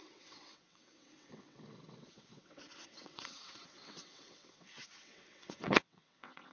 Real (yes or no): no